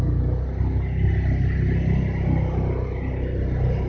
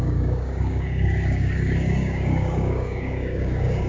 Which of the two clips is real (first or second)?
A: first